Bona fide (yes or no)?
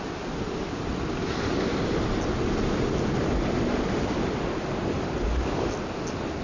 yes